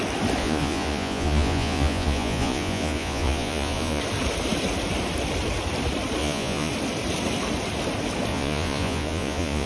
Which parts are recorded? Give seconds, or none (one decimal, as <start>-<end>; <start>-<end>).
0.0-0.4; 4.0-6.2; 6.7-8.3